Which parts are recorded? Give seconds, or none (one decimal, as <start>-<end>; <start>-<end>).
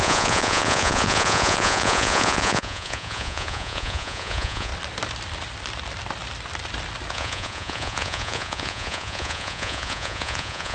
4.7-7.1